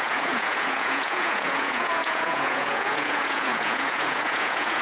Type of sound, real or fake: fake